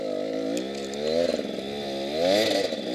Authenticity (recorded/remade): recorded